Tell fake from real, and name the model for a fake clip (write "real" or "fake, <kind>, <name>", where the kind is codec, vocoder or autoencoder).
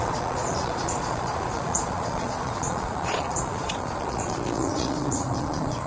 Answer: fake, vocoder, Vocos